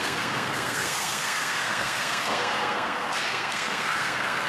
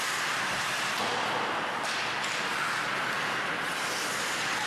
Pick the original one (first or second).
second